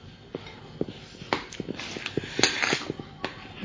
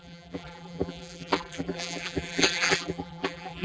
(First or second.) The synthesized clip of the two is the second